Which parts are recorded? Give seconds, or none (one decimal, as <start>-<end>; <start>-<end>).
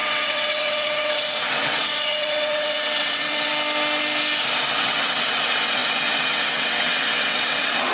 3.5-4.7